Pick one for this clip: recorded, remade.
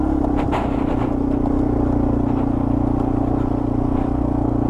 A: recorded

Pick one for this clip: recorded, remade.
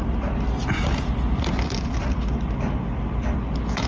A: recorded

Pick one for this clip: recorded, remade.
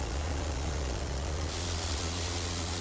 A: remade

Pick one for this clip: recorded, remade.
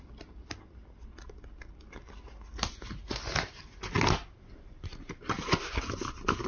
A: recorded